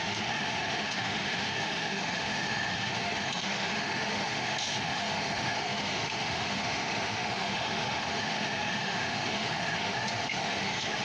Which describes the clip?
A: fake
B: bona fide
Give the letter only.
A